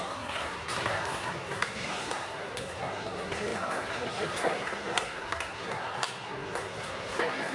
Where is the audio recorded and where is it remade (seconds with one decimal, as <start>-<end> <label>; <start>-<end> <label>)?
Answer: 0.0-7.5 remade